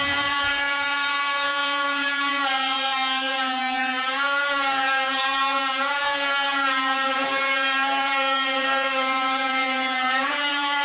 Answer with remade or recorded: remade